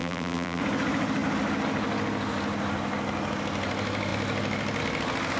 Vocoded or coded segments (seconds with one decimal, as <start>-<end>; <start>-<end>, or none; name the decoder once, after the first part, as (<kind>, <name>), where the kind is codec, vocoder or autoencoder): 0.0-0.6 (vocoder, BigVGAN v2)